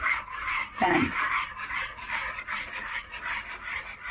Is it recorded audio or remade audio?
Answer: remade